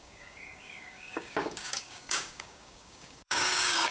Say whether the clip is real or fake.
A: fake